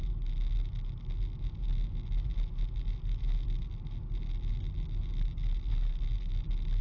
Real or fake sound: real